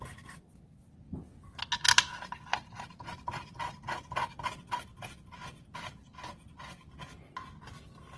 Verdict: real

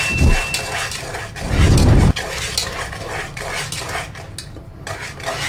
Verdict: real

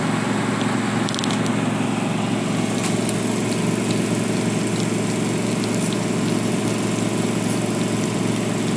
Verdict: real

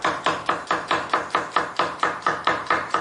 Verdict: fake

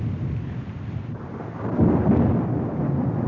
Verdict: real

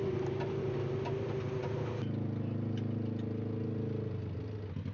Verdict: real